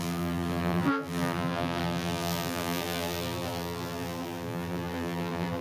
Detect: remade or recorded remade